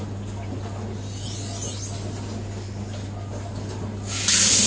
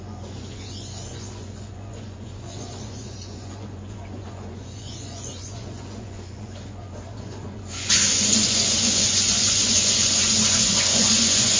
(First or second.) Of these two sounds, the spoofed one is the second